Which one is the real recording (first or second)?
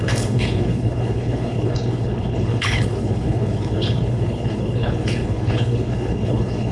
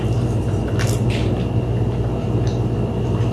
second